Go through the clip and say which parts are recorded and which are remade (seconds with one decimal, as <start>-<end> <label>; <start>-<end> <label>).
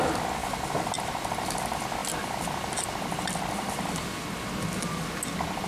0.0-5.7 recorded